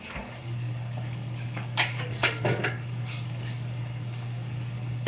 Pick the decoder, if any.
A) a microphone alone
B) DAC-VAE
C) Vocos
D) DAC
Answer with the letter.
D